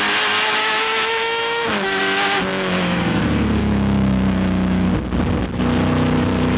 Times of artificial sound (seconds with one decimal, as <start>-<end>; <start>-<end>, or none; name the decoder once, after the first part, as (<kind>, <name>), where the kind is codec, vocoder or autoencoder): 0.6-2.0 (autoencoder, DAC-VAE); 2.5-3.2; 3.6-4.9